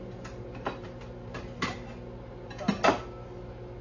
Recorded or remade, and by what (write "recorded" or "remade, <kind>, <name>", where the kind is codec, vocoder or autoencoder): recorded